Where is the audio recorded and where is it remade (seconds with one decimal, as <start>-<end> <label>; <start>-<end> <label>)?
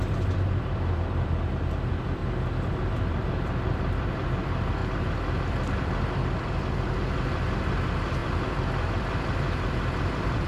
0.0-2.2 remade; 2.2-2.7 recorded; 2.7-4.8 remade; 4.8-5.4 recorded; 5.4-10.5 remade